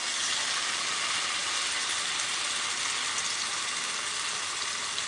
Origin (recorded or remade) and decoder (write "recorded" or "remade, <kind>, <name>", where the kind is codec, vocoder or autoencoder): recorded